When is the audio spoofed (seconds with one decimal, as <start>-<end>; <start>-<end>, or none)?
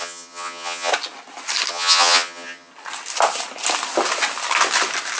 0.0-0.9; 1.7-2.7